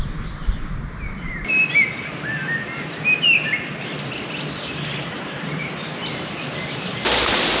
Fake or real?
real